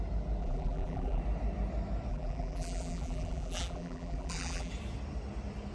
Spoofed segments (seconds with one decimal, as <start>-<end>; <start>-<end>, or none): 0.4-1.2; 2.1-4.7